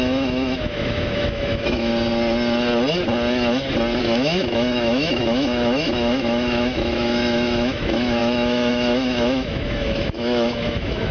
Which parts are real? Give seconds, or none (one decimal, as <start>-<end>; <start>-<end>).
1.9-4.0